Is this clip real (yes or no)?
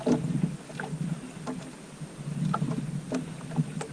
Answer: yes